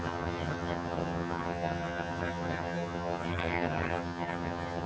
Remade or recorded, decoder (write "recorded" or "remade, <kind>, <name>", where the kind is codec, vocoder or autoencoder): remade, vocoder, HiFi-GAN